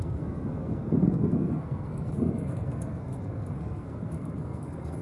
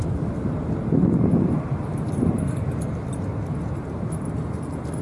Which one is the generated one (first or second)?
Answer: first